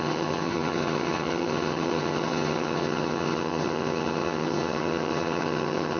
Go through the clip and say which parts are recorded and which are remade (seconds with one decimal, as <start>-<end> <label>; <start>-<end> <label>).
0.0-6.0 remade